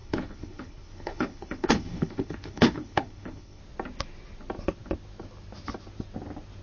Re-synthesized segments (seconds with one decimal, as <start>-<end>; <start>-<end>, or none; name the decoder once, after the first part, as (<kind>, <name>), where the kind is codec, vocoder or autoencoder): 0.0-3.6 (codec, HILCodec)